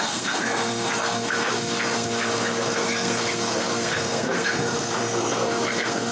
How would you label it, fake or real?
fake